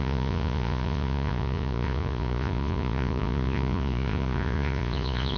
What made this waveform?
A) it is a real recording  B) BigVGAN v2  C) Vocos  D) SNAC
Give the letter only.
C